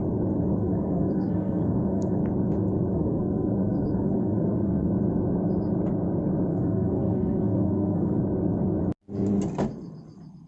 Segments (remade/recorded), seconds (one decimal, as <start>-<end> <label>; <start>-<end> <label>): 0.0-0.6 recorded; 0.6-2.2 remade; 2.2-2.9 recorded; 2.9-4.9 remade; 4.9-6.5 recorded; 6.5-8.2 remade; 8.2-10.5 recorded